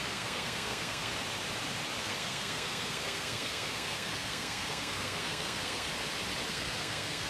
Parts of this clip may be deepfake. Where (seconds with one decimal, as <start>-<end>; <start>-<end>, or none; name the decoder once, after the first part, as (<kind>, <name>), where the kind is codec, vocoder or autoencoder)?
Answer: 0.0-1.1 (codec, SNAC); 2.0-5.9; 6.5-7.3